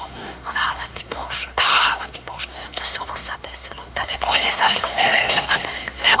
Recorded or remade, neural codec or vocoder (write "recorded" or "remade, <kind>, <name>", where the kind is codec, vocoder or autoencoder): remade, codec, SNAC